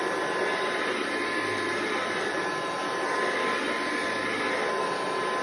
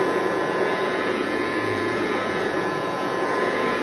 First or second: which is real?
first